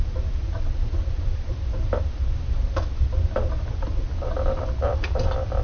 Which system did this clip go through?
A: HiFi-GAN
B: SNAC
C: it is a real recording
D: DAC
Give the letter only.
C